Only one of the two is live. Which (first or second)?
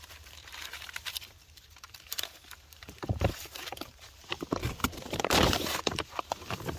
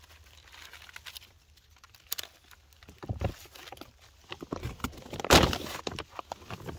second